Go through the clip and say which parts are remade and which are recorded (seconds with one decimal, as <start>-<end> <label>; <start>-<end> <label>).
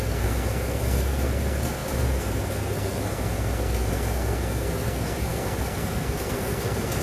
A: 0.0-7.0 remade